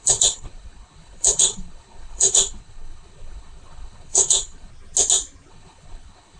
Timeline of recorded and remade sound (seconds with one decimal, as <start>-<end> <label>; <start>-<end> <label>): 0.0-4.7 remade; 4.7-5.5 recorded; 5.5-6.4 remade